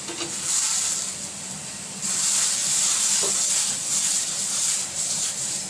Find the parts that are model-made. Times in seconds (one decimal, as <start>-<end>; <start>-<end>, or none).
2.6-3.3; 4.1-5.7

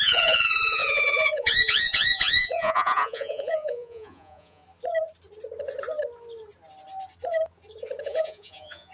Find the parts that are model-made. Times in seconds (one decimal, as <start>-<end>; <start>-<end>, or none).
0.0-4.6; 8.0-8.9